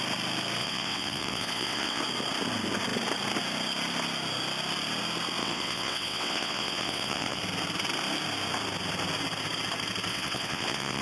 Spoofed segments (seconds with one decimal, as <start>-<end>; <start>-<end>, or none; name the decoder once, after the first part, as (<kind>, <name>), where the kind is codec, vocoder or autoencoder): 0.6-2.0 (vocoder, WaveNeXt); 5.4-7.4; 10.1-11.0